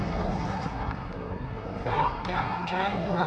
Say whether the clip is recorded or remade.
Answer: remade